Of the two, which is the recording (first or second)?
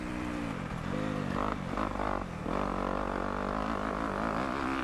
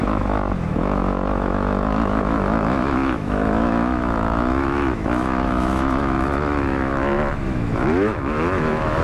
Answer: first